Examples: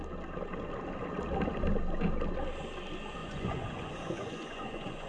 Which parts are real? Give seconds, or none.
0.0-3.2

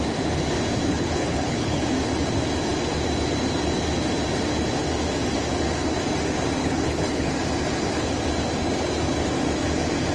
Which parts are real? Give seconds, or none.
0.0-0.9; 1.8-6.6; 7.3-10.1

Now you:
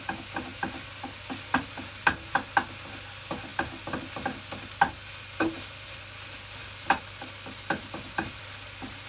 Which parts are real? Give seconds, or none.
0.0-9.1

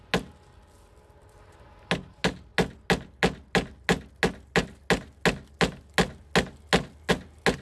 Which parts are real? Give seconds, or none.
0.0-7.6

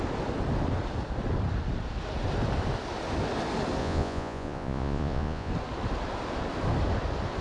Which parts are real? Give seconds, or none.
0.0-3.8; 5.5-7.4

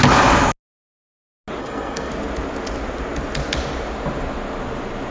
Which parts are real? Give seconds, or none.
0.0-1.6; 2.1-5.1

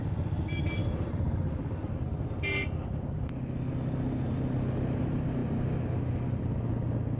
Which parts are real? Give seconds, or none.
0.0-0.8; 1.4-7.2